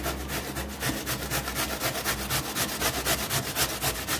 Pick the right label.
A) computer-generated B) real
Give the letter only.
B